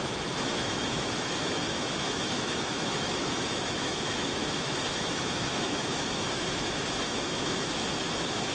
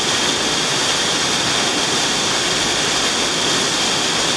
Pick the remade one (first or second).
first